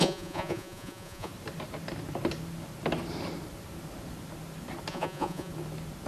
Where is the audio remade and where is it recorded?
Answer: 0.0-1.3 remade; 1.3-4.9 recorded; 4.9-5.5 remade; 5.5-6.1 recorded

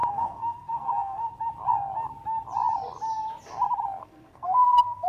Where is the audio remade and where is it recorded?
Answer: 0.0-1.3 remade; 1.3-4.0 recorded; 4.0-5.1 remade

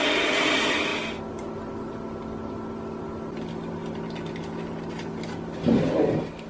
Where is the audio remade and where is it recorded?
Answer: 0.0-6.5 recorded